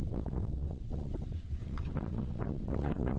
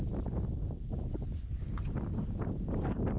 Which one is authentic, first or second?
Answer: second